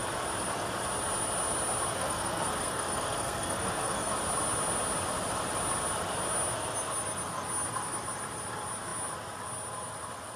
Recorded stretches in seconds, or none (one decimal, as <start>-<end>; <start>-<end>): 0.0-1.9; 4.1-10.4